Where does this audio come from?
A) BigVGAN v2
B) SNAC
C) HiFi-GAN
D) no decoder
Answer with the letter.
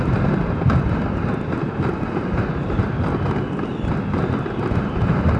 D